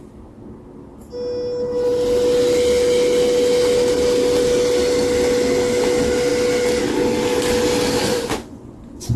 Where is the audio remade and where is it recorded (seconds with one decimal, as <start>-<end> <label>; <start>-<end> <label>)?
0.0-8.0 recorded; 8.0-9.2 remade